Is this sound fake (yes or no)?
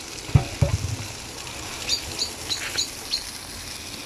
no